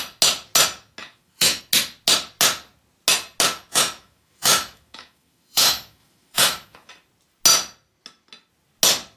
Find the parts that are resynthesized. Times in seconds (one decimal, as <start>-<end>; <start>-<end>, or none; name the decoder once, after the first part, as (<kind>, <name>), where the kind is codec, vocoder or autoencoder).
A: 1.0-1.6 (autoencoder, DAC-VAE); 3.7-6.9